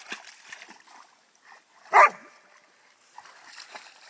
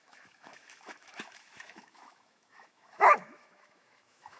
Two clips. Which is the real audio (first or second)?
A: first